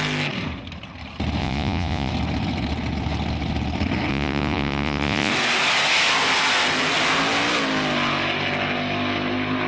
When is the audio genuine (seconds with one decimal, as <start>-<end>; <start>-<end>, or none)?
0.0-1.4; 2.1-4.1; 5.3-9.7